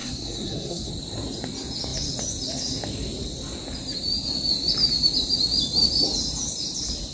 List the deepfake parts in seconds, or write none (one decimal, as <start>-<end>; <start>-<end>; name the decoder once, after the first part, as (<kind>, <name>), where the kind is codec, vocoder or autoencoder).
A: 0.0-0.9 (codec, SNAC)